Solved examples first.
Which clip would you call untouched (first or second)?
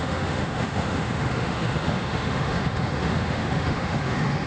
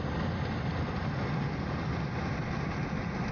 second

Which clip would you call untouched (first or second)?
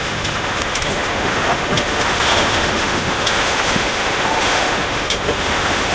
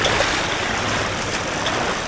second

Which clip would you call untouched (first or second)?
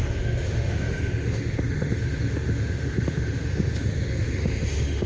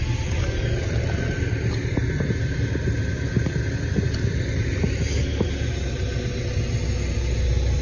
second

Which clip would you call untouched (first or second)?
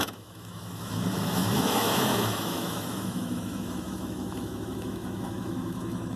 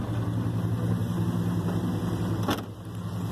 second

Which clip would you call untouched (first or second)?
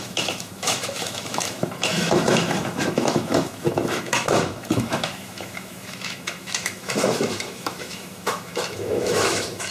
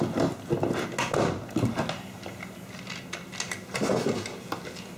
second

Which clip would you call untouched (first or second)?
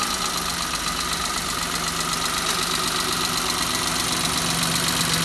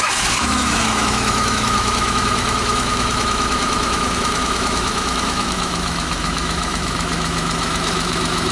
first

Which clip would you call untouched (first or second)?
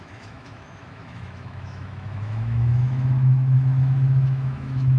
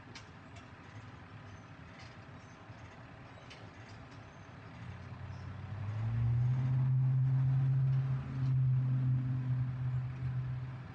second